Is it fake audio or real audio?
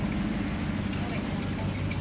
real